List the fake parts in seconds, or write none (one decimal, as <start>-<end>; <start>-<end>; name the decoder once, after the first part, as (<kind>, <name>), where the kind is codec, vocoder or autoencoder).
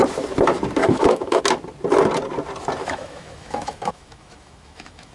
0.8-1.4 (autoencoder, DAC-VAE); 2.8-5.1